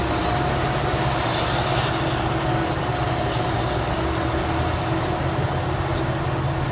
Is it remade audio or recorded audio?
recorded